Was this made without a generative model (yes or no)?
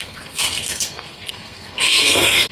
no